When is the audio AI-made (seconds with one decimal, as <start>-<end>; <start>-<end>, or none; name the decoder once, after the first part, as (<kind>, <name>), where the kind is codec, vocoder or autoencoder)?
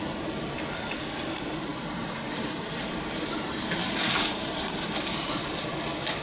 1.7-5.4 (vocoder, BigVGAN v2)